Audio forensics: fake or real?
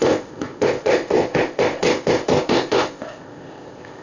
fake